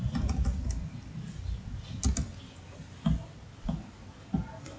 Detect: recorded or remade recorded